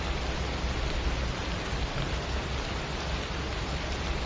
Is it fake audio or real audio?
real